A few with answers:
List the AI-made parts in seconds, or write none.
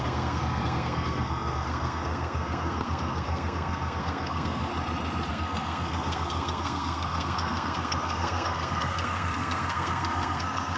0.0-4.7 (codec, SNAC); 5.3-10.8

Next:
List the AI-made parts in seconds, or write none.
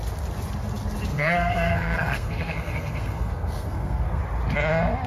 1.1-4.2 (codec, SNAC)